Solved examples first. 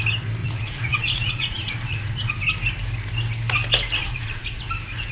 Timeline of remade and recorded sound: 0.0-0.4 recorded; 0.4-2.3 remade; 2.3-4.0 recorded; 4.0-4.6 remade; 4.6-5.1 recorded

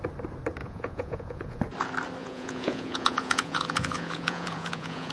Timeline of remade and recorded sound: 0.0-0.6 recorded; 0.6-1.6 remade; 1.6-2.2 recorded; 2.2-5.1 remade

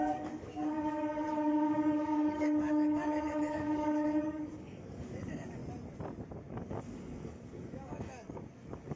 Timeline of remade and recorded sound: 0.0-5.6 remade; 5.6-6.5 recorded; 6.5-9.0 remade

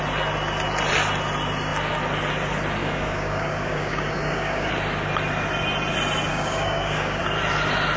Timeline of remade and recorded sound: 0.0-2.8 recorded; 2.8-4.7 remade; 4.7-6.3 recorded; 6.3-7.2 remade; 7.2-8.0 recorded

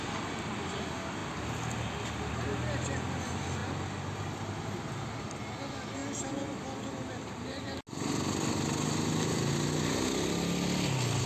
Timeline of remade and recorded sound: 0.0-11.3 recorded

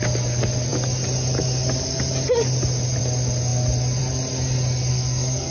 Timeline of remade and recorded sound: 0.0-4.9 recorded; 4.9-5.5 remade

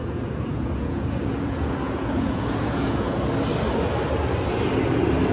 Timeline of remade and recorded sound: 0.0-3.2 remade; 3.2-5.3 recorded

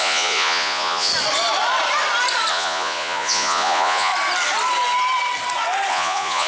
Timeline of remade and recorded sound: 0.0-1.1 remade; 1.1-2.5 recorded; 2.5-4.1 remade; 4.1-5.9 recorded; 5.9-6.5 remade